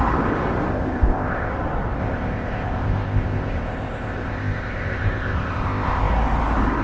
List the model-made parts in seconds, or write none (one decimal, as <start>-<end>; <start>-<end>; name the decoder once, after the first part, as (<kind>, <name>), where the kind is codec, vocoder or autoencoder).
0.7-1.5 (codec, ZipCodec); 2.0-6.1